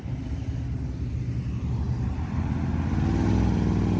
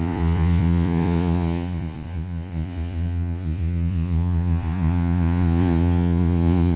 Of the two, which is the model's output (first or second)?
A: second